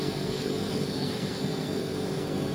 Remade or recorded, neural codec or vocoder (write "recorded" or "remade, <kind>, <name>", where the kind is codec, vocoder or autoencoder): remade, codec, SNAC